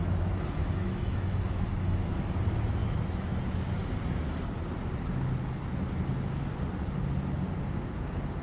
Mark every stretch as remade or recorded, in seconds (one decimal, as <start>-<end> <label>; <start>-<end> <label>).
0.0-2.2 remade; 2.2-2.8 recorded; 2.8-3.4 remade; 3.4-8.4 recorded

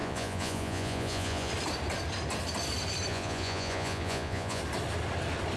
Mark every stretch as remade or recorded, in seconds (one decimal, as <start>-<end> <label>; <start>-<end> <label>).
0.0-1.5 remade; 1.5-3.1 recorded; 3.1-4.6 remade; 4.6-5.6 recorded

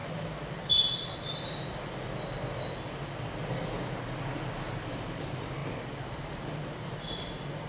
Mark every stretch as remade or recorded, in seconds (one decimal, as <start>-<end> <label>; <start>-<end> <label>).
0.0-7.7 recorded

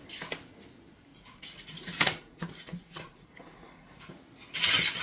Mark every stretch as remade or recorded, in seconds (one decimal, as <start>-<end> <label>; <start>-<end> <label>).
0.0-1.1 recorded; 1.1-4.1 remade; 4.1-5.0 recorded

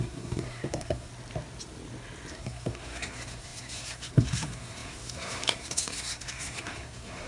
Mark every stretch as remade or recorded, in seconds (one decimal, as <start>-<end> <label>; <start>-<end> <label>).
0.0-1.1 remade; 1.1-2.3 recorded; 2.3-7.3 remade

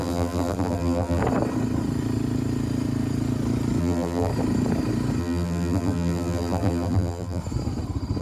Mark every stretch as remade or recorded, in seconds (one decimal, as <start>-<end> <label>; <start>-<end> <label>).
0.0-1.2 remade; 1.2-3.8 recorded; 3.8-4.3 remade; 4.3-5.2 recorded; 5.2-7.4 remade; 7.4-8.2 recorded